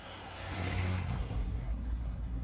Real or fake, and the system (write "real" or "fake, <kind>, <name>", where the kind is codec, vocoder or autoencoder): fake, codec, SNAC